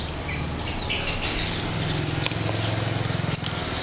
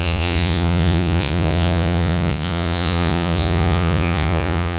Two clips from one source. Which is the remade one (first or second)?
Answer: second